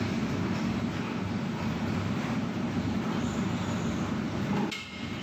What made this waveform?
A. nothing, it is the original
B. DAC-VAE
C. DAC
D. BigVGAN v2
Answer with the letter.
A